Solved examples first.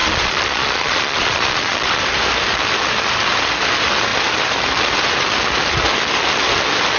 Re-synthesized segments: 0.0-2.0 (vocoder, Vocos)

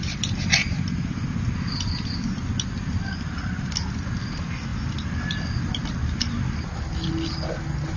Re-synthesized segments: none

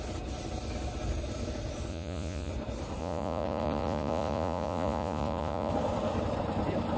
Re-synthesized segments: 1.9-2.5 (vocoder, Vocos); 3.0-5.7

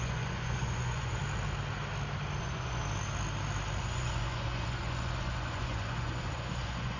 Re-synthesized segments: 0.0-1.2 (vocoder, Vocos); 2.4-2.8; 3.8-7.0

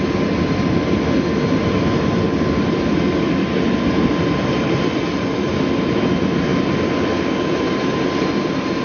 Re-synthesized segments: none

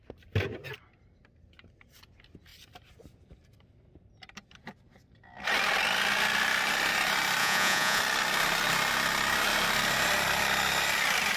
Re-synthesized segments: 7.4-8.0 (vocoder, Vocos)